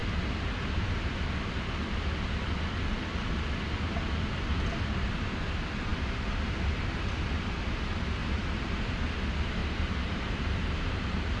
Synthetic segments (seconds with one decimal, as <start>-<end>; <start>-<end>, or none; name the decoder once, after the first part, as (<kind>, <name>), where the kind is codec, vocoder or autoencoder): 8.2-9.0 (vocoder, BigVGAN v2); 9.6-11.4